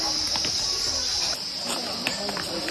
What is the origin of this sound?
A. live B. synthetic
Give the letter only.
A